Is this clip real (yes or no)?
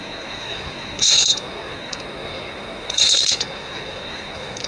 no